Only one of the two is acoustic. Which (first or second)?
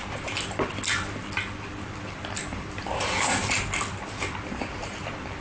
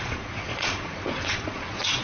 first